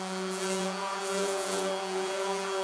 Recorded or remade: remade